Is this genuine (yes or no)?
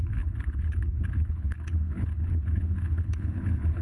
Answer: no